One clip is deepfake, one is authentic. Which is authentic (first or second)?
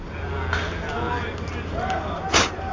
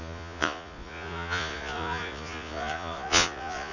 first